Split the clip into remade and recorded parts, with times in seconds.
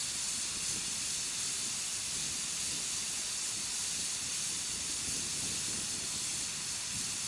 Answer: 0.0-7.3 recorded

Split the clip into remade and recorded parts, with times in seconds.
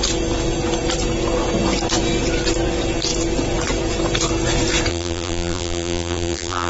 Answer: 0.0-4.9 recorded; 4.9-6.7 remade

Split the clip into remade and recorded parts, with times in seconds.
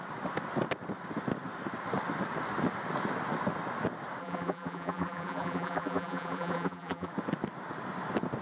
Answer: 0.0-4.2 recorded; 4.2-7.1 remade; 7.1-8.4 recorded